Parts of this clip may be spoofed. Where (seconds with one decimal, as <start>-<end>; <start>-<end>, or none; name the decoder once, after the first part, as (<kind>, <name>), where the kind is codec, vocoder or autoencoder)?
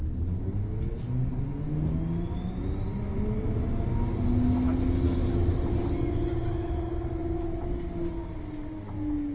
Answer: none